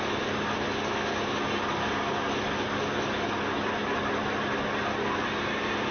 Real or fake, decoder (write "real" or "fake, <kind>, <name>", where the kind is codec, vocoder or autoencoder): real